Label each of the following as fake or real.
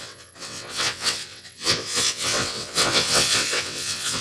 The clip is fake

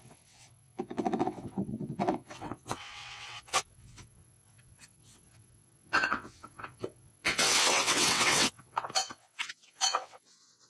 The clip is fake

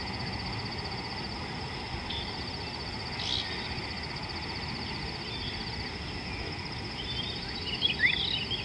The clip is real